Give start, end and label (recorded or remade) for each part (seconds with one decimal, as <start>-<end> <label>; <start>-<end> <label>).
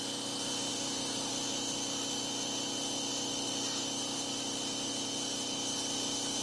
0.0-0.7 recorded; 0.7-1.3 remade; 1.3-6.4 recorded